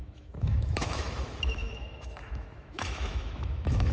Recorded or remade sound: remade